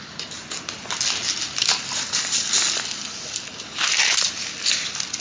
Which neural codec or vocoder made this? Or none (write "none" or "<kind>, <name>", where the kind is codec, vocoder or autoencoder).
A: none